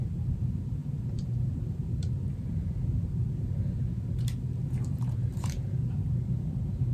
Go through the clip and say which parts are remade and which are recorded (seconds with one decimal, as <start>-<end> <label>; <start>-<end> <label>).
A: 0.0-0.8 recorded; 0.8-3.2 remade; 3.2-5.3 recorded; 5.3-5.8 remade; 5.8-6.9 recorded